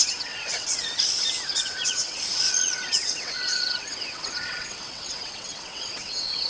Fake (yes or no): yes